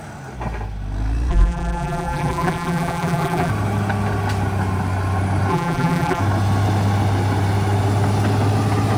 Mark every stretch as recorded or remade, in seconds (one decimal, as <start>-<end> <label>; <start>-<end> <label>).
0.0-1.3 recorded; 1.3-3.5 remade; 3.5-5.5 recorded; 5.5-6.2 remade; 6.2-9.0 recorded